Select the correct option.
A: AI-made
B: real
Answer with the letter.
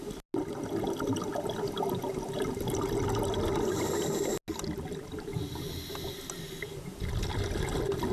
B